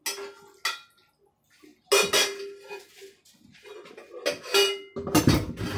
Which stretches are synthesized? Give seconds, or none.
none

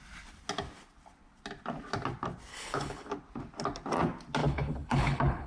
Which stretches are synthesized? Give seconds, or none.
2.5-3.1 (codec, HILCodec); 4.4-5.5

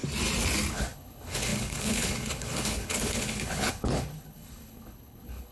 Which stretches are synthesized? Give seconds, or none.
0.7-5.5 (codec, HILCodec)

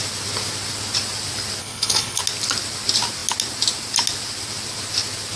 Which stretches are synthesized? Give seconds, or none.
1.6-2.2 (codec, HILCodec)

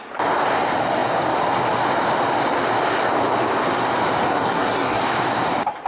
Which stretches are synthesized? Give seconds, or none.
4.3-5.0 (codec, SNAC)

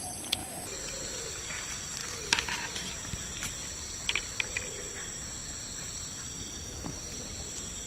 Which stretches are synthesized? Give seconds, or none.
0.0-0.4 (vocoder, BigVGAN v2); 1.3-2.0; 4.5-7.9

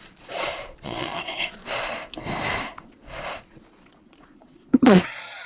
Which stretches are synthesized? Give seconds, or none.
0.0-1.6 (vocoder, Vocos); 2.8-5.5

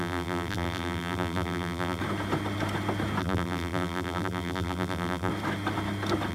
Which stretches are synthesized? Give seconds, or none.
0.0-2.0 (vocoder, BigVGAN v2); 3.2-5.3